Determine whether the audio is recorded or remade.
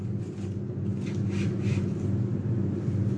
recorded